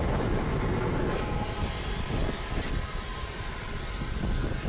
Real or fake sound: real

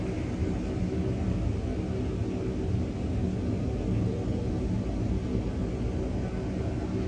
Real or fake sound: real